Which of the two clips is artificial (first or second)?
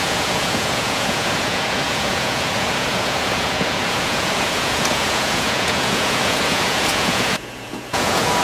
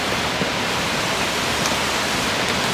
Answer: first